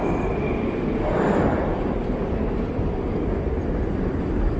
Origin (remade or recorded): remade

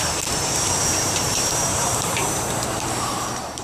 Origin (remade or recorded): remade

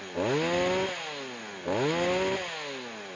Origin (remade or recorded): recorded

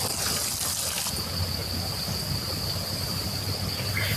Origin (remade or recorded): recorded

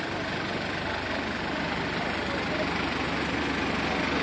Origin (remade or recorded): recorded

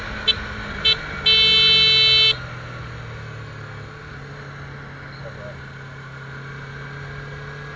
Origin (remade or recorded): recorded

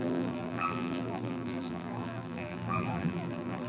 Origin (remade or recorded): remade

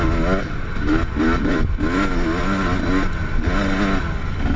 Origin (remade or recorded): recorded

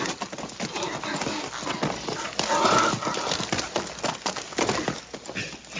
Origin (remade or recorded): recorded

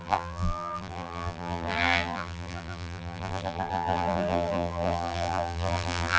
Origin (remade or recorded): remade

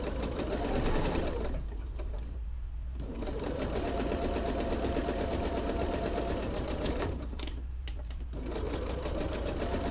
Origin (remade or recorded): remade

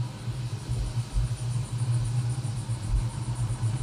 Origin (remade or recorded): remade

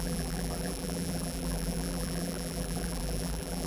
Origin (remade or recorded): remade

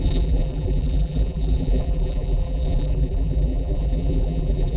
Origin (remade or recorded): remade